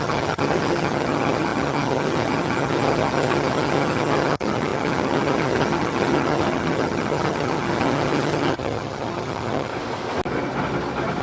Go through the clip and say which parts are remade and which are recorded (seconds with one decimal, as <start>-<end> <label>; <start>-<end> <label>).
0.0-9.7 remade; 9.7-11.2 recorded